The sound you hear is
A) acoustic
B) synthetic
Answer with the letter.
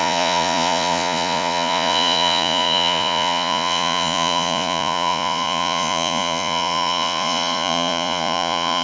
B